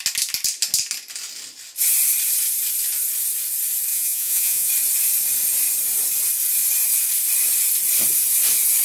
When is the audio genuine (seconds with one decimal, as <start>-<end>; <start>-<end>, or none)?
0.0-3.9; 4.7-8.8